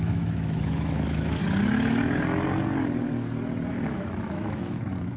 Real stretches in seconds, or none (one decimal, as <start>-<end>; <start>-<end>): 1.4-3.7